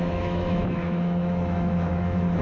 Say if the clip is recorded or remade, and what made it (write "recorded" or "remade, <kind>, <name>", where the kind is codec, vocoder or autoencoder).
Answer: remade, autoencoder, DAC-VAE